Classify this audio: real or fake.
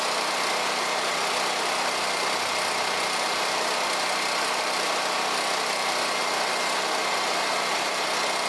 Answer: real